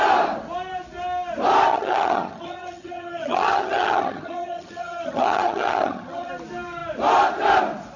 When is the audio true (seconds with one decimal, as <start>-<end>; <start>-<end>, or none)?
0.0-1.7; 6.3-8.0